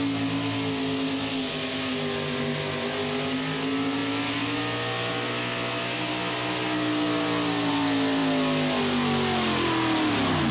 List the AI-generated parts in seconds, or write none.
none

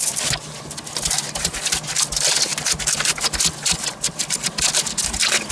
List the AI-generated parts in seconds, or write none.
none

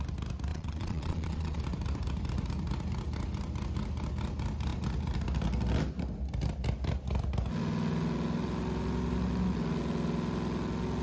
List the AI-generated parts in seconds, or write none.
0.5-1.6 (vocoder, Vocos)

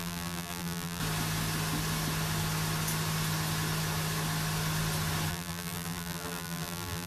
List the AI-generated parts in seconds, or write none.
0.0-1.0 (vocoder, BigVGAN v2); 5.3-7.1

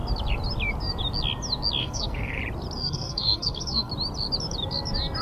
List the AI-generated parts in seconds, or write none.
1.8-2.4 (codec, SNAC); 2.8-3.9

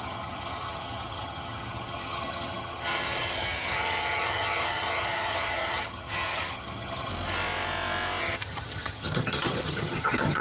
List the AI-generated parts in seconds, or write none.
0.0-7.1 (vocoder, HiFi-GAN); 8.2-10.4

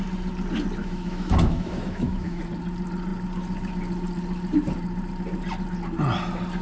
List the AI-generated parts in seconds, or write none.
0.8-2.4 (autoencoder, DAC-VAE)

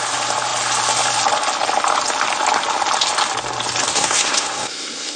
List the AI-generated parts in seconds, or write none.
3.9-5.2 (codec, SNAC)